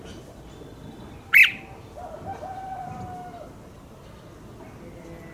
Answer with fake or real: real